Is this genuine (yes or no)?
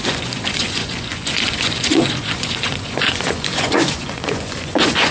no